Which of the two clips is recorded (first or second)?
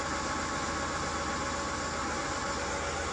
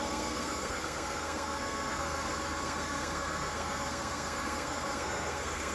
first